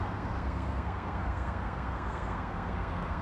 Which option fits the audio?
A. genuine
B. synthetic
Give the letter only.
B